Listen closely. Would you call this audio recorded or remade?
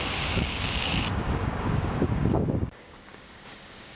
remade